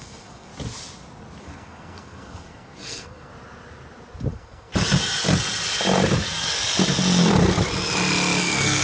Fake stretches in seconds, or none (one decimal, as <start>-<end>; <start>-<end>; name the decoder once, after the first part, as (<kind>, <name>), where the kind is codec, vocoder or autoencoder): 0.0-0.5 (codec, SNAC); 1.4-3.3; 4.3-4.7; 8.4-8.8